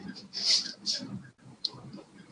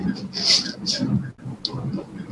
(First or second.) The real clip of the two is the second